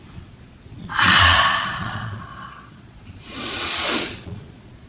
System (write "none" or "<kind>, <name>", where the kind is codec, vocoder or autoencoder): vocoder, Vocos